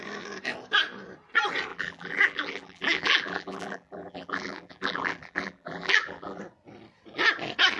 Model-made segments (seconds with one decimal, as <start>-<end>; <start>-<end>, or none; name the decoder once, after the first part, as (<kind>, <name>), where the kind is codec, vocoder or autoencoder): 1.7-6.4 (vocoder, BigVGAN v2)